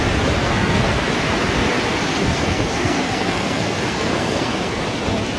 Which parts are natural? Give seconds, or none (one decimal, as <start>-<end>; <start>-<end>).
0.0-0.4; 1.1-2.1; 4.8-5.4